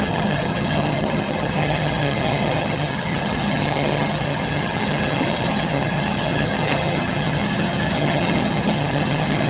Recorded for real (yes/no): no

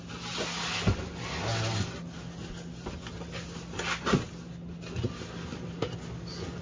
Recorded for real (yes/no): yes